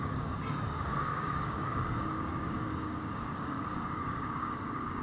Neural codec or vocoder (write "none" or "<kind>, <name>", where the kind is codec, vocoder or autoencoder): codec, DAC